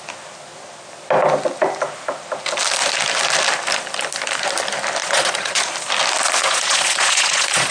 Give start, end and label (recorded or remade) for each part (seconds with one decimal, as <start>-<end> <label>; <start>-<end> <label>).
0.0-5.0 recorded; 5.0-5.6 remade; 5.6-6.4 recorded; 6.4-7.7 remade